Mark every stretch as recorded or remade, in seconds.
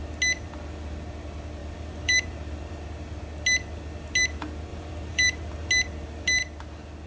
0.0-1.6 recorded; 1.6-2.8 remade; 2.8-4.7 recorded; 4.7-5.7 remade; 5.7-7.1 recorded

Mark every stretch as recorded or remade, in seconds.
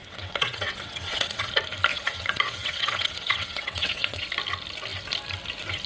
0.0-1.5 remade; 1.5-1.9 recorded; 1.9-4.3 remade; 4.3-5.9 recorded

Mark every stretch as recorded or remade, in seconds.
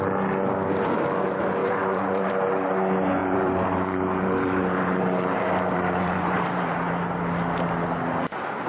0.0-1.6 recorded; 1.6-2.3 remade; 2.3-3.2 recorded; 3.2-6.9 remade; 6.9-8.7 recorded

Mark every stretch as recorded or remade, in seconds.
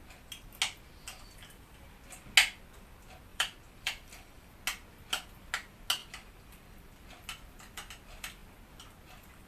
0.0-3.3 recorded; 3.3-4.5 remade; 4.5-6.0 recorded; 6.0-7.0 remade; 7.0-9.5 recorded